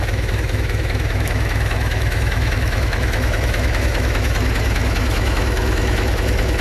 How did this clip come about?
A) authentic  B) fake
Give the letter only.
B